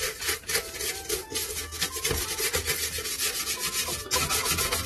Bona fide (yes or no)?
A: yes